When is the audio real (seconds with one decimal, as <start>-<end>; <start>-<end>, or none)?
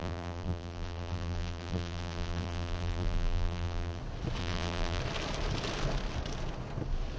4.0-4.4; 5.0-7.2